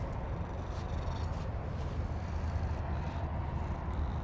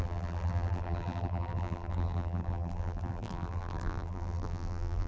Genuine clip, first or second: first